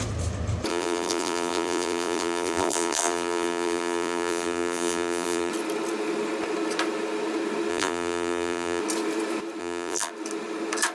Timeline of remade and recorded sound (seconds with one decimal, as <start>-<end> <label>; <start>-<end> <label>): 0.0-0.7 recorded; 0.7-5.5 remade; 5.5-7.7 recorded; 7.7-8.8 remade; 8.8-9.6 recorded; 9.6-10.1 remade; 10.1-10.9 recorded